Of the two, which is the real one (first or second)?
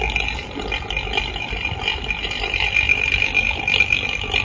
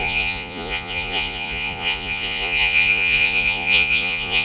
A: first